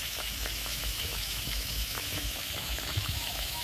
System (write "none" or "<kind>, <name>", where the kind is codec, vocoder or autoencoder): autoencoder, DAC-VAE